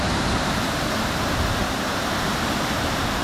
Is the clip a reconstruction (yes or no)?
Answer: yes